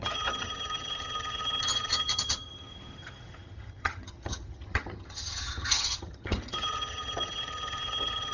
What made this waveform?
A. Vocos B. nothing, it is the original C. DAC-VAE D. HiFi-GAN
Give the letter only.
D